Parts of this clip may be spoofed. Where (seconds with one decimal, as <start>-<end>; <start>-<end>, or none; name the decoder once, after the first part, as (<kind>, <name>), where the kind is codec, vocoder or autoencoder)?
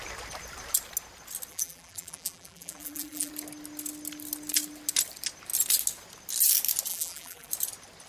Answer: 1.5-3.3 (vocoder, BigVGAN v2); 6.9-7.5